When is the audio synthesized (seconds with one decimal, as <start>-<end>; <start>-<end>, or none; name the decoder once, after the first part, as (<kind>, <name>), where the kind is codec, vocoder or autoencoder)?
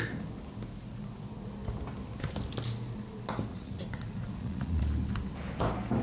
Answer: 3.5-4.8 (vocoder, Vocos)